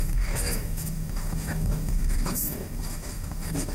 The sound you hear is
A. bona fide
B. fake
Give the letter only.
B